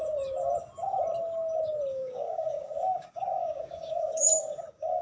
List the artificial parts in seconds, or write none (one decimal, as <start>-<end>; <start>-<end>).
1.9-5.0